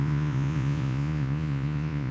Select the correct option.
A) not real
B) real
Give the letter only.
A